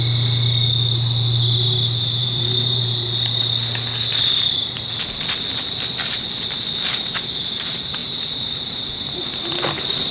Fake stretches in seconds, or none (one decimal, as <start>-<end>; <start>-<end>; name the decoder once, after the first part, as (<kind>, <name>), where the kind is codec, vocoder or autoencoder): 2.2-2.8 (vocoder, BigVGAN v2); 8.0-9.4